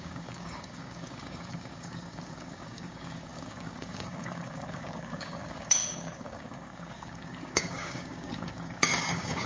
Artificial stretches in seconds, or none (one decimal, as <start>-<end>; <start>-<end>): 0.0-9.5